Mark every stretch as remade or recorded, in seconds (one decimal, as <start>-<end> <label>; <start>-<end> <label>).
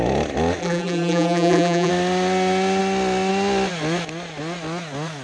0.0-0.6 recorded; 0.6-1.9 remade; 1.9-5.2 recorded